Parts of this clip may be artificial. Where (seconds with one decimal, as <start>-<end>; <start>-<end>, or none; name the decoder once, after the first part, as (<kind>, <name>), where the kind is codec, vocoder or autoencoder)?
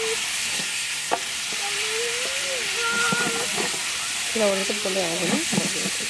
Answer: 0.5-1.1 (codec, SNAC)